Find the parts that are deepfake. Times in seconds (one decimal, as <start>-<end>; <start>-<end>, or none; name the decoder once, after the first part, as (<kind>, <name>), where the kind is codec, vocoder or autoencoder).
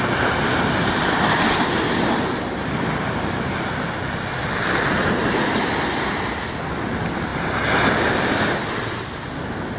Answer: none